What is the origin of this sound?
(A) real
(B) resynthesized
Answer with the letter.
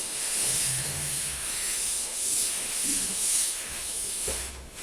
B